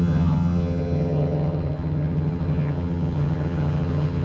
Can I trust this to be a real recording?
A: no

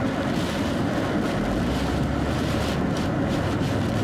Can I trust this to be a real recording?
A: yes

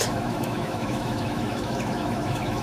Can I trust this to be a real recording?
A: no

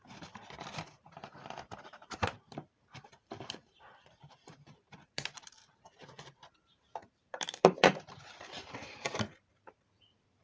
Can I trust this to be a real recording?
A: no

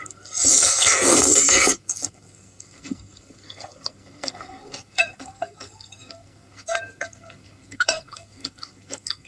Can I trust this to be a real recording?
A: no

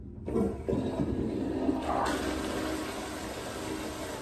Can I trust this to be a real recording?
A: yes